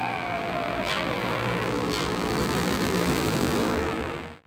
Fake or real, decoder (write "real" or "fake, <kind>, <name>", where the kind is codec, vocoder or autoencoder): fake, vocoder, BigVGAN v2